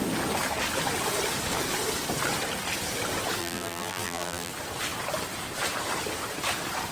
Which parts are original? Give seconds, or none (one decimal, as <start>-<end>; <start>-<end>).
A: 0.0-3.4; 4.5-6.9